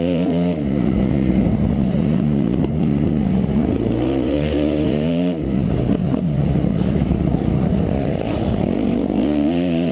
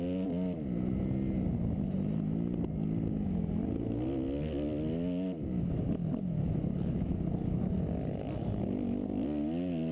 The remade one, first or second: first